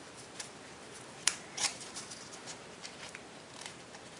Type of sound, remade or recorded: remade